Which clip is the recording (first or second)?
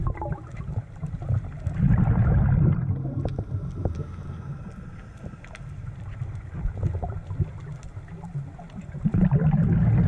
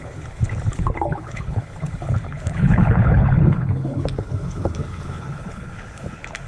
first